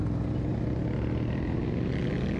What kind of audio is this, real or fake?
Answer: real